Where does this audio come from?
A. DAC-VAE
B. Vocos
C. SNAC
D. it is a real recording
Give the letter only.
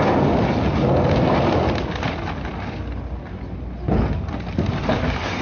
D